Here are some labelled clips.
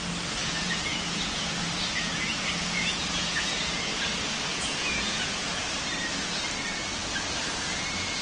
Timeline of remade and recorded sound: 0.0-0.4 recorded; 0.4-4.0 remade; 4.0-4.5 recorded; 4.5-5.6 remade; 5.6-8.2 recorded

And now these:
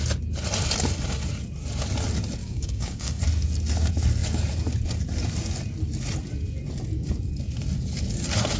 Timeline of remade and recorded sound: 0.0-2.4 recorded; 2.4-3.2 remade; 3.2-8.6 recorded

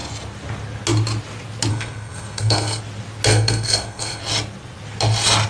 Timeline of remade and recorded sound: 0.0-1.7 recorded; 1.7-2.8 remade; 2.8-3.3 recorded; 3.3-4.2 remade; 4.2-5.5 recorded

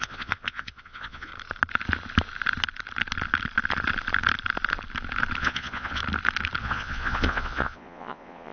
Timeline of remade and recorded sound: 0.0-1.3 remade; 1.3-5.4 recorded; 5.4-6.0 remade; 6.0-6.6 recorded; 6.6-8.5 remade

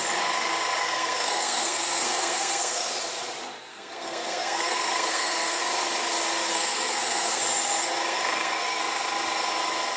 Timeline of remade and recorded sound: 0.0-0.8 recorded; 0.8-2.9 remade; 2.9-3.7 recorded; 3.7-5.6 remade; 5.6-6.5 recorded; 6.5-7.4 remade; 7.4-8.1 recorded; 8.1-8.8 remade; 8.8-10.0 recorded

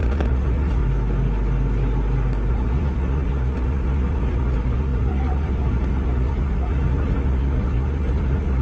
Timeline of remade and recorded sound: 0.0-0.8 remade; 0.8-2.5 recorded; 2.5-8.6 remade

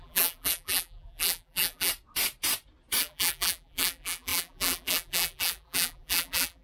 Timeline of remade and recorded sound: 0.0-1.9 remade; 1.9-3.0 recorded; 3.0-6.6 remade